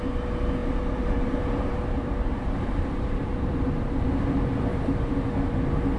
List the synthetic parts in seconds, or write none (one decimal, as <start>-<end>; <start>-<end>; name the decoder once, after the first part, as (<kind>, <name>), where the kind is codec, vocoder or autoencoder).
0.6-3.9 (vocoder, BigVGAN v2); 4.7-5.3